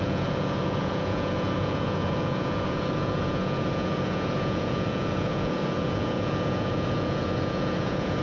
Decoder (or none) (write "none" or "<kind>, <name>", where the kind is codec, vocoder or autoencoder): vocoder, Vocos